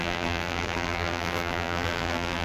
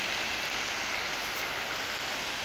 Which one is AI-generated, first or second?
first